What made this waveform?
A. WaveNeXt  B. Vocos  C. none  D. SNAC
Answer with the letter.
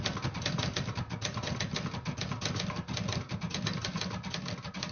C